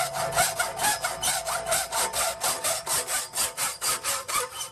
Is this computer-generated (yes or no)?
no